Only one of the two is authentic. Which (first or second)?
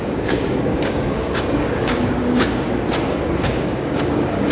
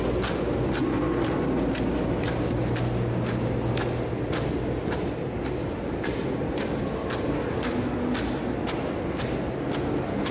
second